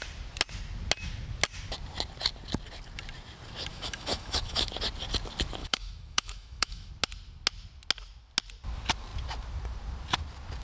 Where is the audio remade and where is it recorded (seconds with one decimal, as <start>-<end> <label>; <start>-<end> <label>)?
0.0-3.7 recorded; 3.7-4.7 remade; 4.7-5.6 recorded; 5.6-6.9 remade; 6.9-10.6 recorded